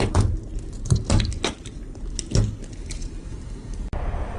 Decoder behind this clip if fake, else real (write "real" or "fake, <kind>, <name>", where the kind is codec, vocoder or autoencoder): real